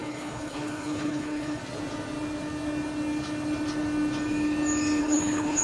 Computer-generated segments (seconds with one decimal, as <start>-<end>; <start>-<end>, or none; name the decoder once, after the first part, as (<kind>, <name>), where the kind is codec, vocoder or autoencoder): 0.0-1.6 (codec, HILCodec); 5.0-5.6